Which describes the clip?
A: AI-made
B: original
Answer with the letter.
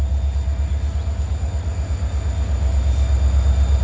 B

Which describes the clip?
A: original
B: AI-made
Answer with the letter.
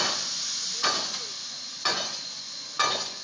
B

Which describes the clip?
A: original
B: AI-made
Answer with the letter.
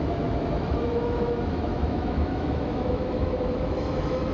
B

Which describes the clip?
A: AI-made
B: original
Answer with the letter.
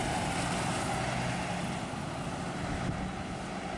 B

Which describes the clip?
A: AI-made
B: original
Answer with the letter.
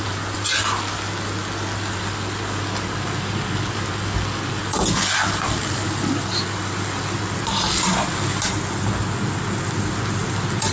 B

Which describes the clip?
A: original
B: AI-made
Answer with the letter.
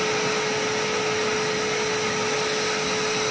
A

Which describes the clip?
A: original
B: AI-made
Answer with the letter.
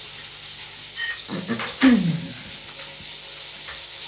A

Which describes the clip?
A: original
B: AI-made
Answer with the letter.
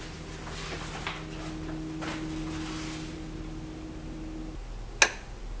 A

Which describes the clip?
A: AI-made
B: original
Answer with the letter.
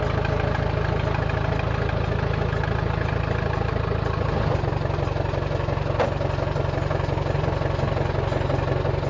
B